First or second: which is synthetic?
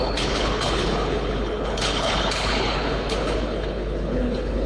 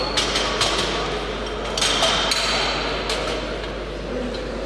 first